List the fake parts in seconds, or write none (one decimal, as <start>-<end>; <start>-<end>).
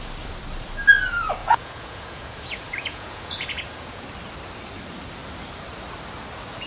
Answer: 1.4-4.0